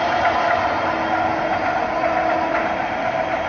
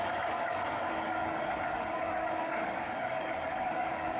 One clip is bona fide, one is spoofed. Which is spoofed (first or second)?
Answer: second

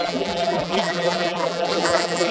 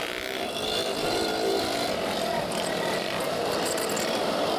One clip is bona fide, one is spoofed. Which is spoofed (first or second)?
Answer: first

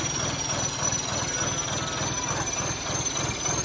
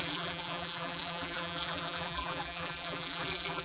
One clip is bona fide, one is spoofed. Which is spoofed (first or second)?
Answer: second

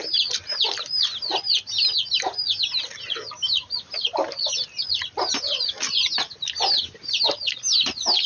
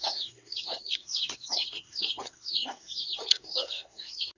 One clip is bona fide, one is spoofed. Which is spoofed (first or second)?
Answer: second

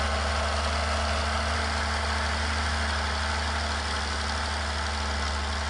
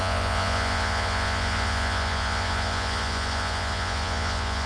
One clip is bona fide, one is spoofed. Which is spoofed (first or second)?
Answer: second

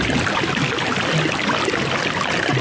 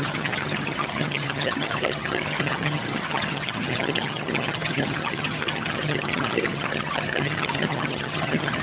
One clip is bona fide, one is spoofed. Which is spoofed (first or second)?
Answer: second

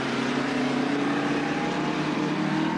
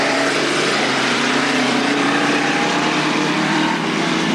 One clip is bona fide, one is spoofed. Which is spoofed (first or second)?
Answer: second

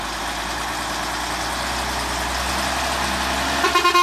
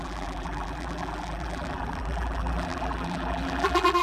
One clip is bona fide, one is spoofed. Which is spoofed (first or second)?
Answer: second